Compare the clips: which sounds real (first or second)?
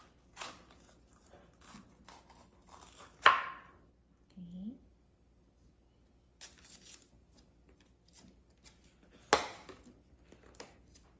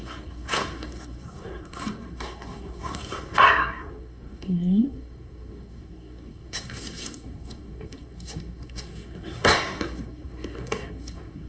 first